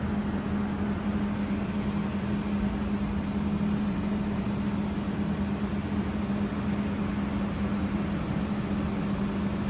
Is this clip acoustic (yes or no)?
yes